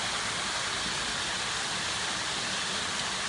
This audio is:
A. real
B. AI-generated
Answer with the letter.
A